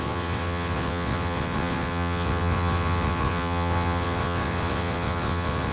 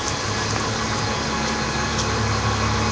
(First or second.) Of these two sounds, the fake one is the first